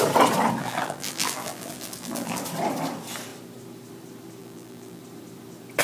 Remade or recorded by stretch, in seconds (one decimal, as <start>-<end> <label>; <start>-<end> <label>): 0.0-0.6 recorded; 0.6-2.4 remade; 2.4-4.4 recorded; 4.4-5.0 remade; 5.0-5.8 recorded